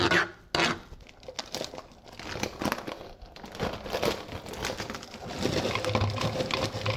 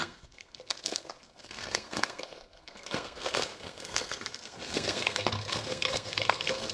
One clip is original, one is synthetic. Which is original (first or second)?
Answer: first